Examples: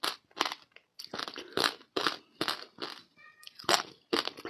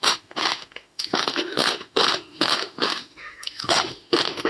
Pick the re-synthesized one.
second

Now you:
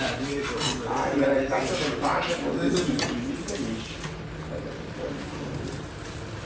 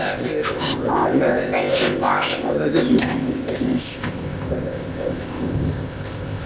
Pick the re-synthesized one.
second